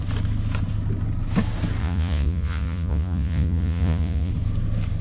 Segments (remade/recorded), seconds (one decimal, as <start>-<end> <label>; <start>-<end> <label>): 0.0-1.8 recorded; 1.8-4.3 remade; 4.3-5.0 recorded